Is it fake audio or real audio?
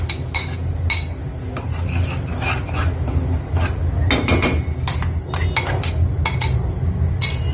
real